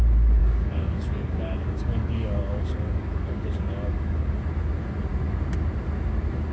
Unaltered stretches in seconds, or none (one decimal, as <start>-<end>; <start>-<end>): 0.0-0.4; 4.3-6.5